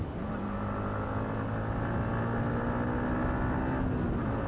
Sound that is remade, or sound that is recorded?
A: recorded